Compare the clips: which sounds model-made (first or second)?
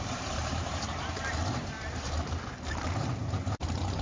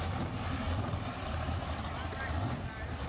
first